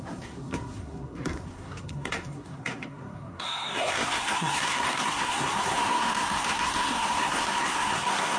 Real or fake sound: fake